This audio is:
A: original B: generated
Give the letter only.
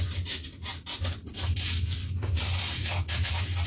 A